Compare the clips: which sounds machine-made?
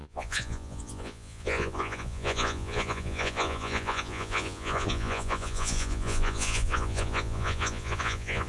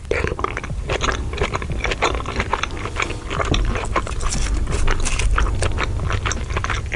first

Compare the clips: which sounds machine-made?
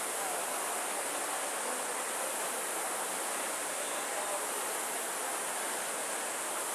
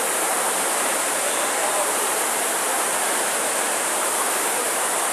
second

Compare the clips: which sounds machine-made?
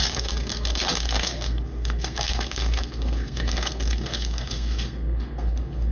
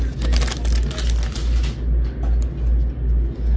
first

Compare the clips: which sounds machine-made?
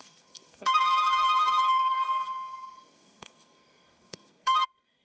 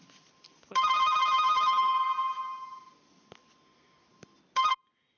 first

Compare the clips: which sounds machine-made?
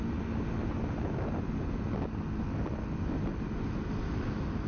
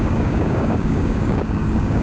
second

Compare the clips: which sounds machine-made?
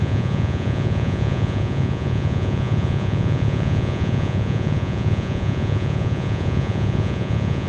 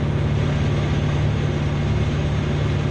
first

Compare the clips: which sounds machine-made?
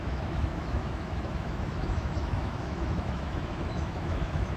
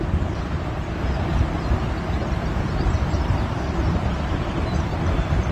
first